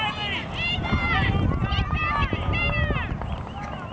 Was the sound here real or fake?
real